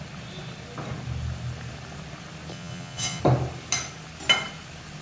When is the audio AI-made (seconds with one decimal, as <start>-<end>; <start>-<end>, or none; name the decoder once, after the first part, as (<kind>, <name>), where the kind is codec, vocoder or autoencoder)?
2.5-3.2 (vocoder, Vocos)